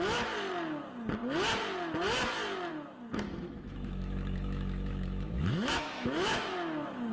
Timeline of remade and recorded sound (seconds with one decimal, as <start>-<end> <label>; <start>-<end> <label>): 0.0-3.1 recorded; 3.1-6.5 remade; 6.5-7.1 recorded